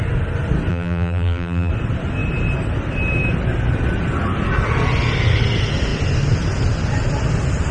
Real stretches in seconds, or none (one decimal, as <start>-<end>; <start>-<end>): 0.0-0.7; 1.7-7.7